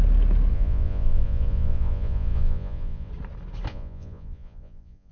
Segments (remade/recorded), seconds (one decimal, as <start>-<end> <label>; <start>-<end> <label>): 0.0-0.5 recorded; 0.5-3.1 remade; 3.1-3.7 recorded; 3.7-5.1 remade